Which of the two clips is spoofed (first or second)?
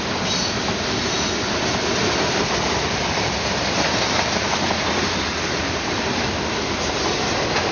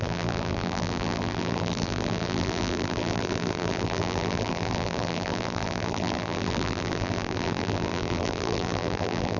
second